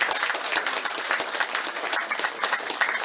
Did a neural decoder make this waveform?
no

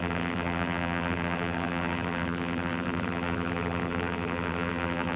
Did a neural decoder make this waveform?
yes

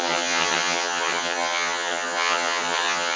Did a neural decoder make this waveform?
yes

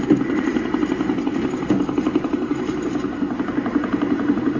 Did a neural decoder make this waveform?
no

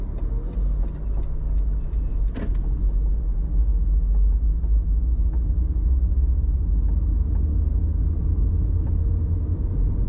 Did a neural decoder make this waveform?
no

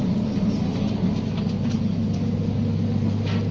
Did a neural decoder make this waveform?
no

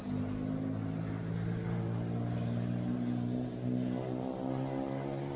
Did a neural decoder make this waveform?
no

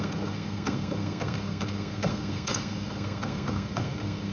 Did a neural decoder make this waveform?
yes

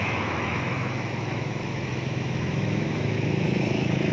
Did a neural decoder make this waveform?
yes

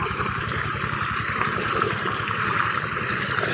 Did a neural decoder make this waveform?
no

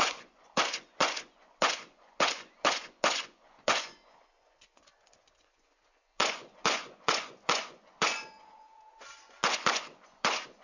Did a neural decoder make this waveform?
yes